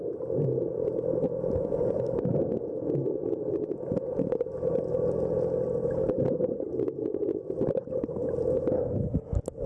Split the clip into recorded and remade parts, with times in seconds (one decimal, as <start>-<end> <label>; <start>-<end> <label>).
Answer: 0.0-3.2 recorded; 3.2-4.7 remade; 4.7-9.7 recorded